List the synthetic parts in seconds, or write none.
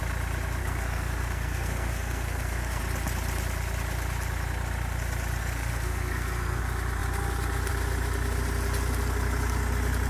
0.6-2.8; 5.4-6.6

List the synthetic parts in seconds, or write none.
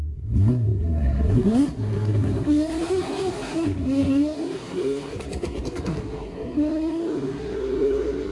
0.0-8.3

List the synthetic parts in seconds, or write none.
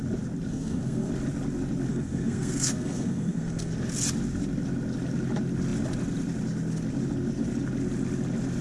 0.5-1.1; 1.9-3.7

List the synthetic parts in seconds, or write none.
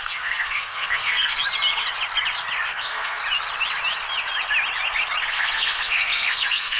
0.0-1.4; 2.7-3.2; 5.3-6.8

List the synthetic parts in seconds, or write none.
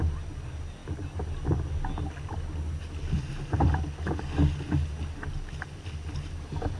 none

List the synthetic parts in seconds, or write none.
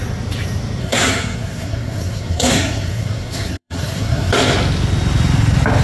0.8-4.3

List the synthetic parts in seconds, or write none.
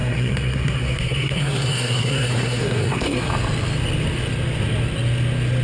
0.0-3.3